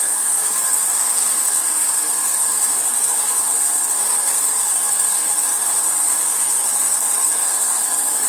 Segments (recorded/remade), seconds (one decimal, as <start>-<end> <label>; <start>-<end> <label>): 0.0-8.3 remade